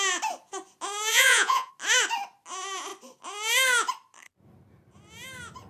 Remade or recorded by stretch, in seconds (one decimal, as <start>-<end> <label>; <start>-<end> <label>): 0.0-1.1 recorded; 1.1-1.7 remade; 1.7-5.7 recorded